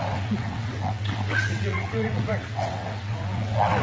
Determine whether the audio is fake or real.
fake